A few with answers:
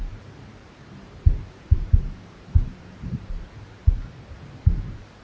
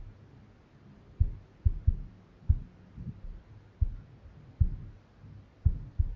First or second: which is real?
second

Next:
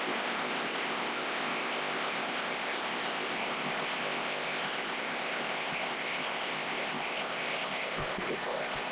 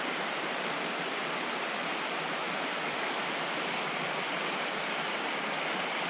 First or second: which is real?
second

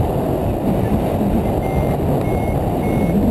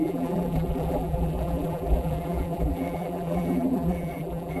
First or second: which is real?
first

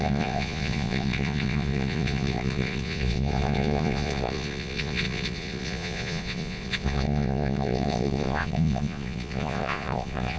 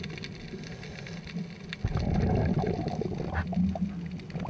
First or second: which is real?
second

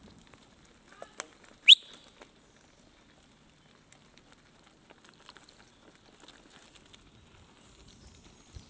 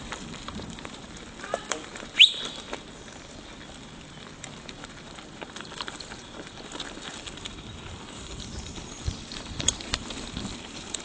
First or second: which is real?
first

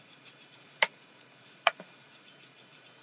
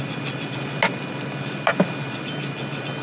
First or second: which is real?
second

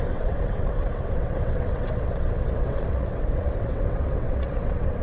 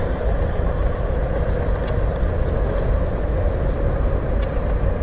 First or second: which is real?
second